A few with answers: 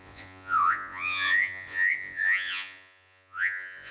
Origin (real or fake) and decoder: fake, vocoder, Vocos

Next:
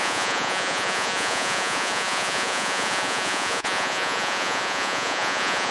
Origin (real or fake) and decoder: fake, vocoder, Vocos